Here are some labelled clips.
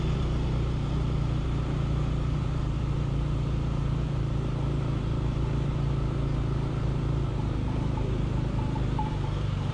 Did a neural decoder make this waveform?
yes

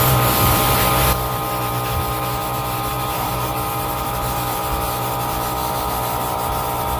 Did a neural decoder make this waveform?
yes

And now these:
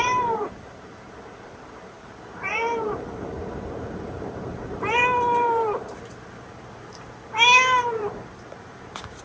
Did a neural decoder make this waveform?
yes